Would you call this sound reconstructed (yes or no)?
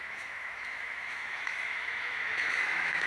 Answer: yes